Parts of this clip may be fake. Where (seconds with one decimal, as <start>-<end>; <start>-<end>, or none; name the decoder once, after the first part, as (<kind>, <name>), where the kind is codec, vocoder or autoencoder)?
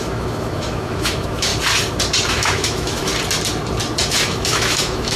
0.0-1.5 (autoencoder, DAC-VAE); 2.3-3.1; 4.1-5.2